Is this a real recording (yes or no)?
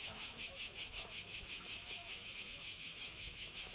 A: no